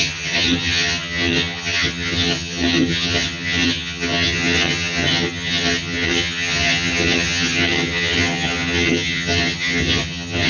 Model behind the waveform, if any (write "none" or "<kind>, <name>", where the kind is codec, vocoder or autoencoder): vocoder, HiFi-GAN